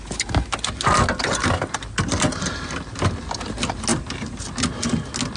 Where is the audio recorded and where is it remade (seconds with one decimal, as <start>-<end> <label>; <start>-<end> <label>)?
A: 0.0-3.9 recorded; 3.9-4.5 remade; 4.5-5.4 recorded